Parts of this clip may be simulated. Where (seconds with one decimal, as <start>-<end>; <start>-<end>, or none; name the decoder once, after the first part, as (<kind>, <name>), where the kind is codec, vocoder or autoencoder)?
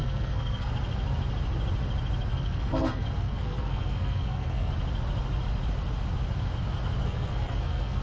0.0-0.7 (codec, SNAC); 2.3-4.7; 7.0-8.0